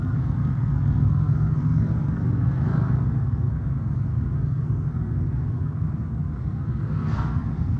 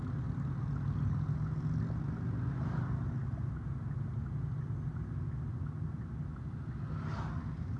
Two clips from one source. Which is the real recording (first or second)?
second